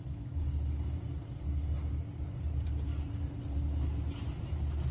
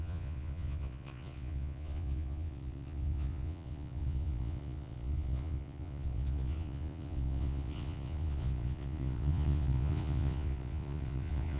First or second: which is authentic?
first